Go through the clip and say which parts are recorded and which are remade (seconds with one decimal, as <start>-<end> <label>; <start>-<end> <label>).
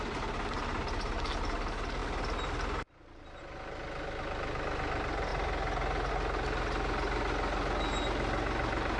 0.0-9.0 recorded